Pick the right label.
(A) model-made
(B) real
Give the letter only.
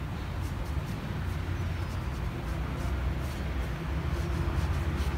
B